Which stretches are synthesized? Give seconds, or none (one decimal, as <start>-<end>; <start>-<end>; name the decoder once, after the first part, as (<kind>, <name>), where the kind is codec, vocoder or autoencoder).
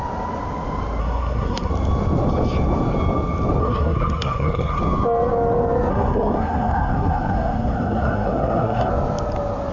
1.0-1.7 (codec, SNAC); 3.6-4.8; 5.9-8.9